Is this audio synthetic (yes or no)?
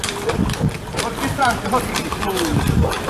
no